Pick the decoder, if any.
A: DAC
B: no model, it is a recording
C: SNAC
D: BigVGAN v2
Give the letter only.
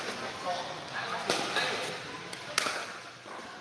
B